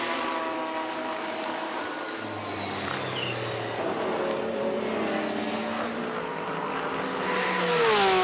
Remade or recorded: recorded